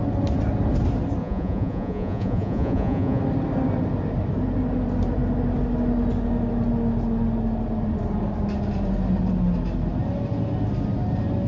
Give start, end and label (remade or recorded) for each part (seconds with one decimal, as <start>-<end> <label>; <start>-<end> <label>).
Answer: 0.0-1.2 recorded; 1.2-3.2 remade; 3.2-11.5 recorded